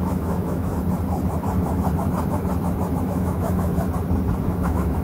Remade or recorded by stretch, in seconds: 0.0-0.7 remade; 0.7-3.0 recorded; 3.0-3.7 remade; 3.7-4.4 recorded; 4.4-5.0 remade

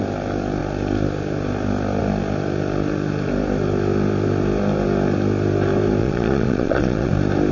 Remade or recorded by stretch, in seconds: 0.0-6.0 recorded; 6.0-7.1 remade; 7.1-7.5 recorded

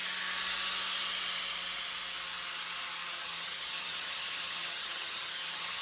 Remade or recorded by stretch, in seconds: 0.0-3.2 recorded; 3.2-5.8 remade

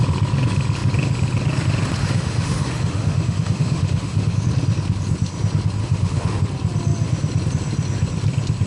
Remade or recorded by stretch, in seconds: 0.0-2.0 recorded; 2.0-4.4 remade; 4.4-5.8 recorded; 5.8-6.4 remade; 6.4-8.7 recorded

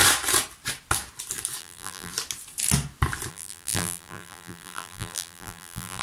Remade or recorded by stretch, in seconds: 0.0-1.6 recorded; 1.6-2.1 remade; 2.1-3.3 recorded; 3.3-6.0 remade

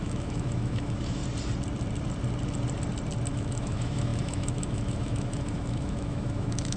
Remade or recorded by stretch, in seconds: 0.0-1.2 remade; 1.2-3.3 recorded; 3.3-6.8 remade